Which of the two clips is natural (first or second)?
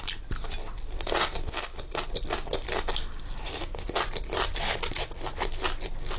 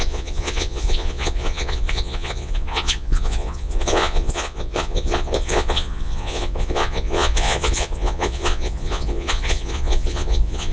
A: first